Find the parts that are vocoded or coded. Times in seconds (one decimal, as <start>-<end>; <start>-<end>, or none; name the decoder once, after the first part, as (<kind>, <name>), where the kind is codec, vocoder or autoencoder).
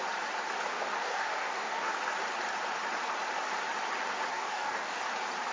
0.7-1.9 (codec, DAC); 4.3-5.0